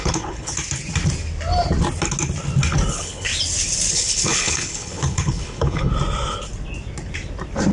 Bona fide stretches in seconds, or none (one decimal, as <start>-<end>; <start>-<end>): 0.5-2.9; 3.3-3.9; 5.9-7.7

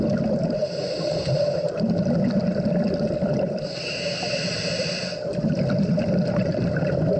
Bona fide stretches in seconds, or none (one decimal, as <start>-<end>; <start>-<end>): 0.0-7.2

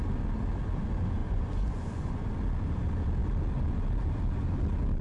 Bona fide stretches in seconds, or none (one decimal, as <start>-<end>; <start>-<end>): 0.0-1.2; 2.3-5.0

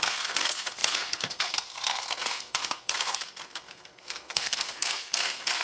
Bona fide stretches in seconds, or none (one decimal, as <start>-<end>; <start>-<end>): none

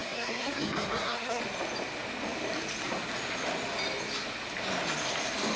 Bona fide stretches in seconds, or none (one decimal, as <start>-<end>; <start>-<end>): 1.4-5.6